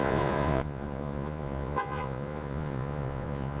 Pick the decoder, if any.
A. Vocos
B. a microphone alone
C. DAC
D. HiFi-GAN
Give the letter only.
A